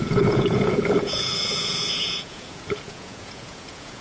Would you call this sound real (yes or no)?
no